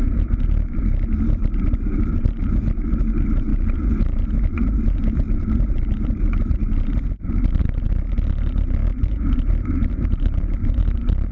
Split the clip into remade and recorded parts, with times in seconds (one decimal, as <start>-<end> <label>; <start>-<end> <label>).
0.0-11.3 remade

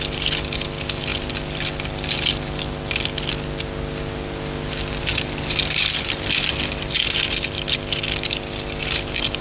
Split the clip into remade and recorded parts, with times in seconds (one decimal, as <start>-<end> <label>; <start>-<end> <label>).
0.0-1.1 remade; 1.1-5.5 recorded; 5.5-9.4 remade

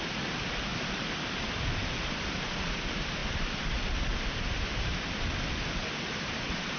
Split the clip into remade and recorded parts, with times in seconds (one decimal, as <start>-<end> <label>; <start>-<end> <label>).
0.0-0.7 remade; 0.7-2.7 recorded; 2.7-4.9 remade; 4.9-6.0 recorded; 6.0-6.8 remade

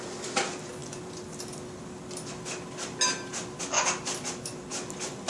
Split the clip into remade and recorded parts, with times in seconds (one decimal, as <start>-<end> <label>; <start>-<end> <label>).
0.0-5.3 recorded

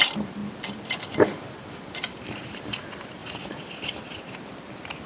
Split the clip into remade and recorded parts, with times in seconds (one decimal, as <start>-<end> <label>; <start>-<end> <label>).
0.0-5.1 remade

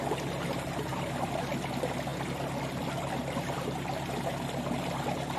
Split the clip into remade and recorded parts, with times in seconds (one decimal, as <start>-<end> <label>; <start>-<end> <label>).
0.0-0.9 recorded; 0.9-1.5 remade; 1.5-5.4 recorded

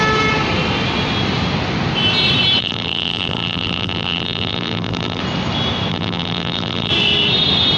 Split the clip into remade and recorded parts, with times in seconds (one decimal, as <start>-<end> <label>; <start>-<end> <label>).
0.0-2.6 recorded; 2.6-5.2 remade; 5.2-5.9 recorded; 5.9-6.9 remade; 6.9-7.8 recorded

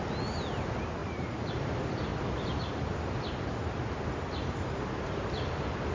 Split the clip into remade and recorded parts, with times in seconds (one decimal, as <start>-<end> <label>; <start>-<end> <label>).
0.0-1.0 recorded; 1.0-1.6 remade; 1.6-5.9 recorded